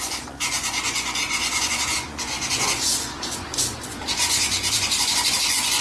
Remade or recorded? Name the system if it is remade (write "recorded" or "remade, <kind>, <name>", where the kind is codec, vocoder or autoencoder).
remade, vocoder, Vocos